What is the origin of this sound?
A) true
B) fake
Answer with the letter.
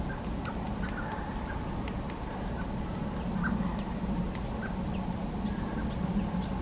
A